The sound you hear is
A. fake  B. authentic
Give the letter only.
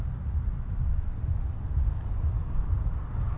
A